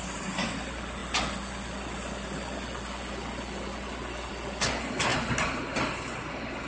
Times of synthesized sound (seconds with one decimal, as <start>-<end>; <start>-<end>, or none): none